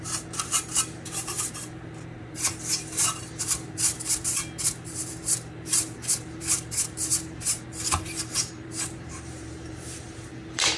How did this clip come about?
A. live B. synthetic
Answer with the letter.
B